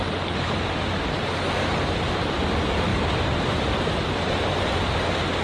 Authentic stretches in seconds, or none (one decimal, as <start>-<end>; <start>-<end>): 0.0-2.9; 4.2-5.4